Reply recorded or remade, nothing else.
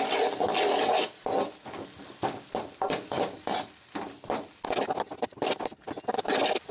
recorded